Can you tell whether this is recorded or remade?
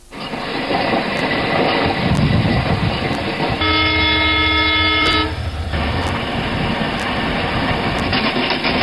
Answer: recorded